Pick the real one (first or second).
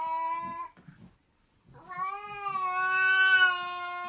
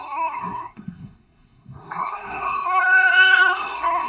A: first